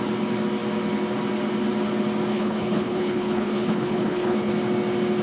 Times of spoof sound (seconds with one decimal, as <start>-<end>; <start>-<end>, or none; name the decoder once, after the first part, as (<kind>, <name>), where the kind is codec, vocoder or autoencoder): 2.3-4.5 (codec, HILCodec)